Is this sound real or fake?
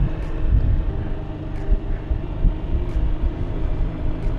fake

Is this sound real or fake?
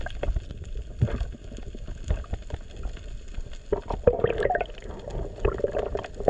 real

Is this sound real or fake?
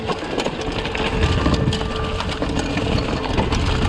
real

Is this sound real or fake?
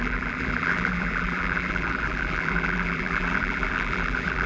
fake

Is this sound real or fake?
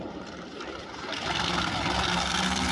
fake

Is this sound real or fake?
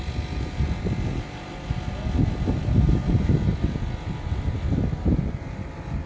real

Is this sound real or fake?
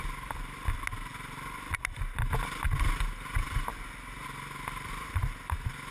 real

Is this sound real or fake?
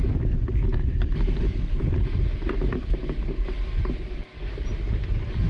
fake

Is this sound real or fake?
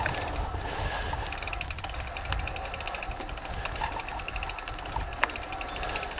real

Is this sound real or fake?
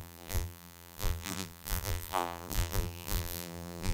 fake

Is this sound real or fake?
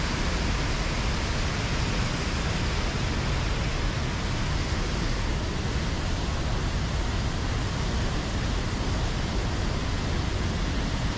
real